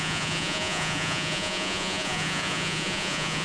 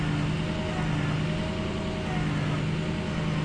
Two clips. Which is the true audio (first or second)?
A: second